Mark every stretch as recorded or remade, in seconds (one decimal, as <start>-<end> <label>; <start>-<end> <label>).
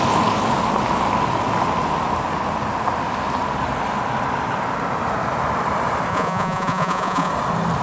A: 0.0-6.1 recorded; 6.1-7.3 remade; 7.3-7.8 recorded